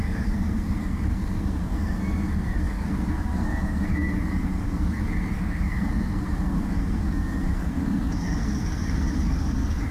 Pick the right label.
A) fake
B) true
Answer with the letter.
A